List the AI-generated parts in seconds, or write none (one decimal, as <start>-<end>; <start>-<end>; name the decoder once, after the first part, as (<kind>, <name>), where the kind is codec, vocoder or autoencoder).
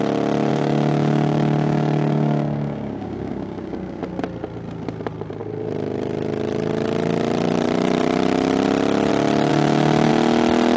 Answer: 0.5-4.0 (codec, DAC); 9.5-10.1